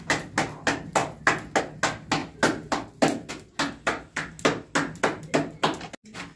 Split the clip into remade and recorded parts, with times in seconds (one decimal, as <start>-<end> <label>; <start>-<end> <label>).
0.0-6.4 recorded